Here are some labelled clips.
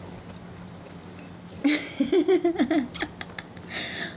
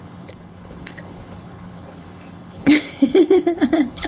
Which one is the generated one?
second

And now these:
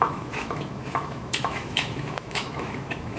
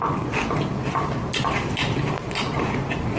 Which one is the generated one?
first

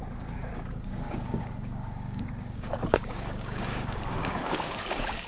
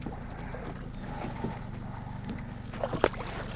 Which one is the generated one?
first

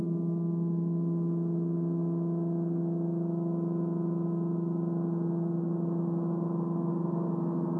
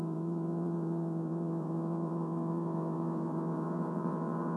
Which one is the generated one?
second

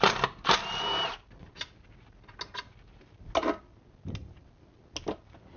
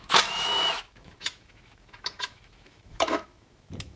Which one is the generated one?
second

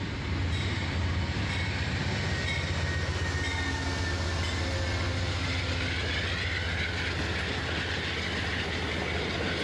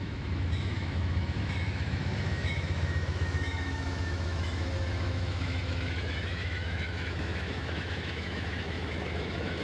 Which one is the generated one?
second